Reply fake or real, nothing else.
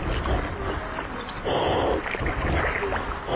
real